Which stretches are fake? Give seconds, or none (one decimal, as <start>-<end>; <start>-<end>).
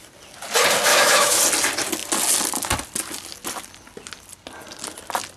0.9-1.4